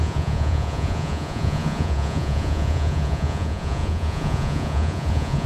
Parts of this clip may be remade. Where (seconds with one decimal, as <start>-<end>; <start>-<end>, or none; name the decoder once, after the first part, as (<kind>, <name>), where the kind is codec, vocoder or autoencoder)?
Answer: 0.0-5.5 (vocoder, Vocos)